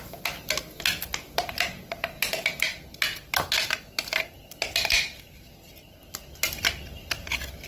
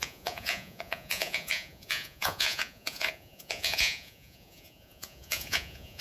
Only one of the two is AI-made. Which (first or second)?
second